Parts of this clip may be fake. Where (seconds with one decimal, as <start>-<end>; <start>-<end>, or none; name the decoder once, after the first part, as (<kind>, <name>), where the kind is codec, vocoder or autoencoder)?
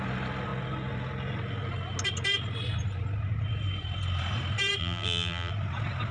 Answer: 4.8-5.5 (vocoder, BigVGAN v2)